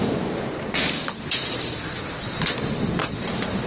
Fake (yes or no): yes